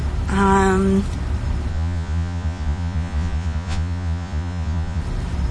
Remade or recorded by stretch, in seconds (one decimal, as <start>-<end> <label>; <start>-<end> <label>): 0.0-1.7 recorded; 1.7-5.0 remade; 5.0-5.5 recorded